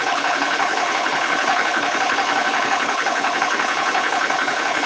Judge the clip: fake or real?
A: fake